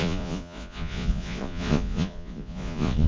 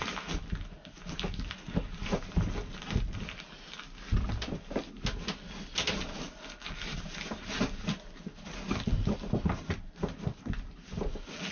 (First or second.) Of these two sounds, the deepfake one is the first